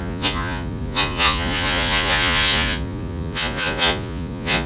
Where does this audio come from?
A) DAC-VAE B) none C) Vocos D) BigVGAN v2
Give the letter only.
C